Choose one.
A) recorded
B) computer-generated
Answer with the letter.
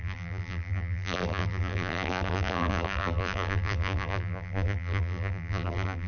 B